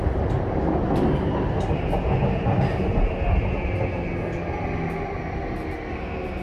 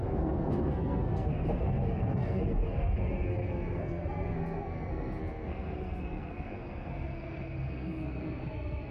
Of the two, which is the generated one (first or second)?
second